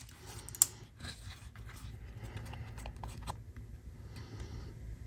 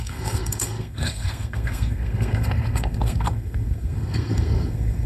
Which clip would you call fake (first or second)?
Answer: second